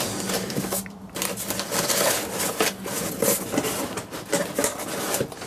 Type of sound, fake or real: real